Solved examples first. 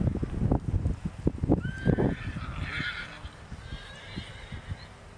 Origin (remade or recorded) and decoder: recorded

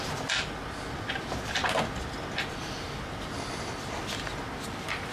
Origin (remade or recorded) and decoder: recorded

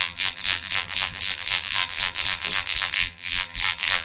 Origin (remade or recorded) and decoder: remade, vocoder, BigVGAN v2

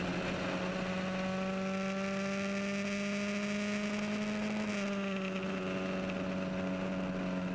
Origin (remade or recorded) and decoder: recorded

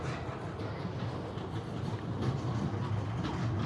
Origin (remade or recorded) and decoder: recorded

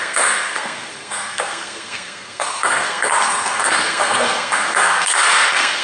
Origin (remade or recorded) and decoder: remade, codec, SNAC